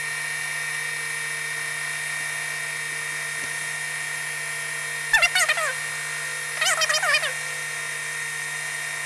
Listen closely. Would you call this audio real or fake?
real